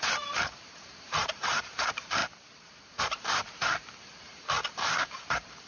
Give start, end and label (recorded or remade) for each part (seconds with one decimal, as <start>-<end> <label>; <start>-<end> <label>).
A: 0.0-2.2 remade; 2.2-3.0 recorded; 3.0-5.7 remade